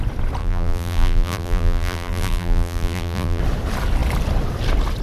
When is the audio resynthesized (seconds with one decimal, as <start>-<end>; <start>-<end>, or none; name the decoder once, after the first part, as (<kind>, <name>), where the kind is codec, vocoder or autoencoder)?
0.4-3.4 (vocoder, BigVGAN v2)